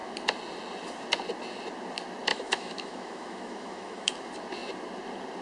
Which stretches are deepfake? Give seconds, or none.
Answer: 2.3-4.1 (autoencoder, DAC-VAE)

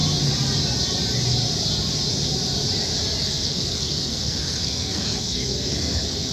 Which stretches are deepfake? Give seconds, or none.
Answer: 3.2-6.3 (codec, SNAC)

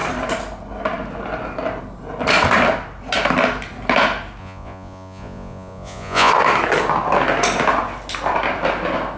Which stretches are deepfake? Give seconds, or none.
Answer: 4.4-6.3 (vocoder, Vocos)

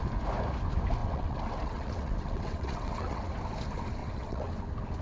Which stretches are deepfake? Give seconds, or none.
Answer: 1.0-3.3 (vocoder, WaveNeXt); 4.0-4.5

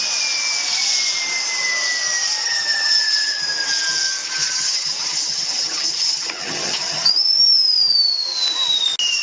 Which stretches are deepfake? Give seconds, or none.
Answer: 2.4-3.4 (vocoder, HiFi-GAN); 4.2-7.1

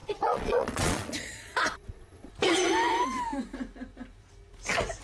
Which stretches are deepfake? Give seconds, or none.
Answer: 0.0-2.3 (vocoder, Vocos)